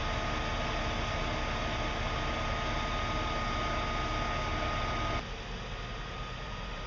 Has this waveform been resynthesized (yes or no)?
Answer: no